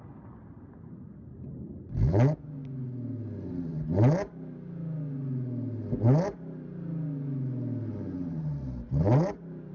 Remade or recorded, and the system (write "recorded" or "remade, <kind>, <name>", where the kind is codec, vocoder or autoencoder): recorded